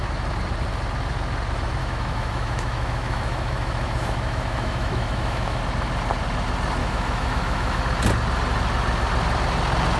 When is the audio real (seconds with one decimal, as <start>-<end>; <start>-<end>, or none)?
0.0-1.8; 5.6-6.8; 7.8-10.0